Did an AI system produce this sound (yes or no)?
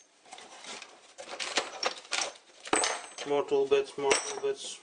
yes